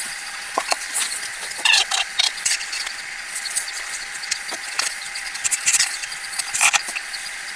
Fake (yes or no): yes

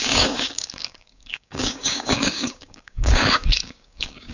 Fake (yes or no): yes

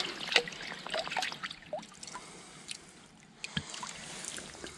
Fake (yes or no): no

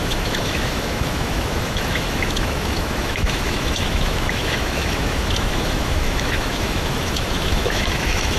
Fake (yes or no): yes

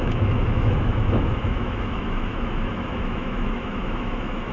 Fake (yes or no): yes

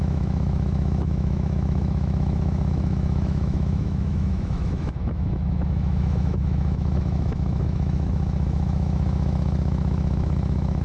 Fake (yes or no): yes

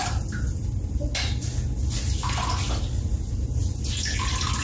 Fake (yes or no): no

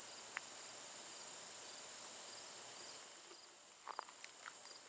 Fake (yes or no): no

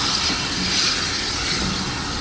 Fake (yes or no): no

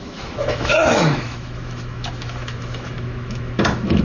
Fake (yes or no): yes